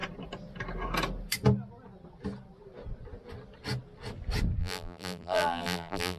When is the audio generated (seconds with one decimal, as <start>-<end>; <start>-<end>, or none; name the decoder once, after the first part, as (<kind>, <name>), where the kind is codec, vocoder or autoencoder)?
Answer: 4.6-6.2 (vocoder, BigVGAN v2)